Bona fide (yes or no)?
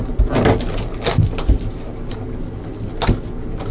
yes